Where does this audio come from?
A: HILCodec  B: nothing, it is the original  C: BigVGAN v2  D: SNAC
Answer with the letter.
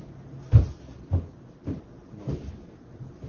B